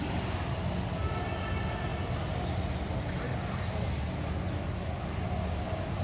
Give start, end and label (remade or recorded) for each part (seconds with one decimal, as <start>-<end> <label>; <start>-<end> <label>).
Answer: 0.0-6.0 recorded